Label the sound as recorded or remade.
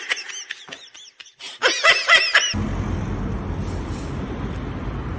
recorded